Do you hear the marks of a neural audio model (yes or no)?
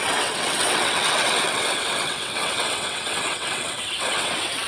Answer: yes